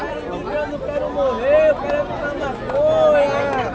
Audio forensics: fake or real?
real